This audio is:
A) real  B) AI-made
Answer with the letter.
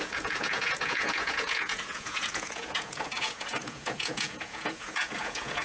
B